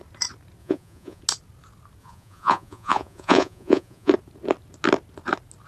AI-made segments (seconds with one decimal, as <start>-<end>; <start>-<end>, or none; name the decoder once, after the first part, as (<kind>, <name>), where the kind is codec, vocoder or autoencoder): 0.6-1.2 (vocoder, Vocos); 2.0-4.1